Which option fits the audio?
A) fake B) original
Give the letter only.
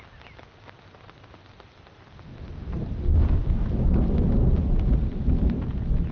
B